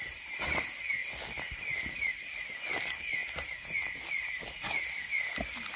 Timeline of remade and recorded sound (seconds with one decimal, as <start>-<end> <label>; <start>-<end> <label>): 0.0-5.8 recorded